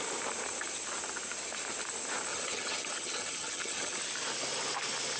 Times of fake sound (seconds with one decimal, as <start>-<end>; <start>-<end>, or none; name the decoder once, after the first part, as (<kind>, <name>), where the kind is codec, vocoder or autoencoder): 2.3-4.0 (vocoder, HiFi-GAN)